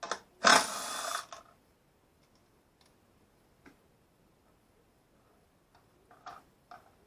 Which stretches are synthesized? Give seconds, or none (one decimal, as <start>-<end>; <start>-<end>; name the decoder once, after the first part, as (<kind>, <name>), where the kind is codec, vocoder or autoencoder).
none